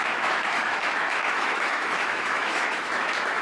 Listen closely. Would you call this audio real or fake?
fake